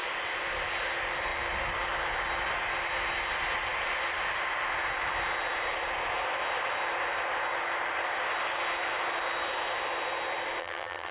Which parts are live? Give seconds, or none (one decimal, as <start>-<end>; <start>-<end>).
0.0-10.6